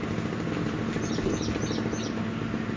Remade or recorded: recorded